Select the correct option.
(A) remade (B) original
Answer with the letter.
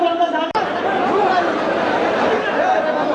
A